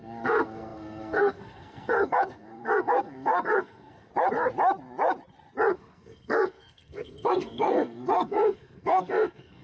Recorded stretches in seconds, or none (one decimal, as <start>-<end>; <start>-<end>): 4.1-5.7